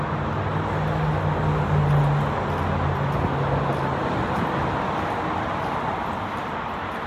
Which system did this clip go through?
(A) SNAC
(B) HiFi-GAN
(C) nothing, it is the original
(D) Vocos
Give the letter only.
C